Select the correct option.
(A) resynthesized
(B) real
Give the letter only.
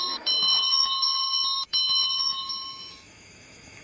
A